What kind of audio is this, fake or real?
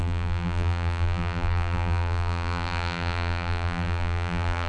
fake